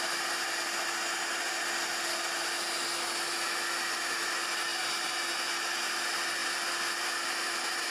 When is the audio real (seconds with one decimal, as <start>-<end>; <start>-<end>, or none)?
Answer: 0.0-7.9